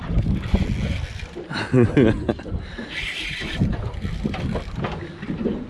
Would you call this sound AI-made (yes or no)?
no